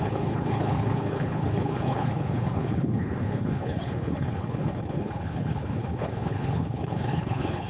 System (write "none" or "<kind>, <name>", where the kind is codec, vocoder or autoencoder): codec, HILCodec